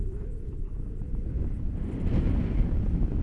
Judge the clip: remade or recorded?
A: recorded